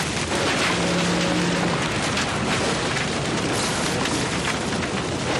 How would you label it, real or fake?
real